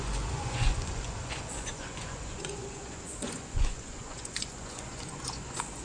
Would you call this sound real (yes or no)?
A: no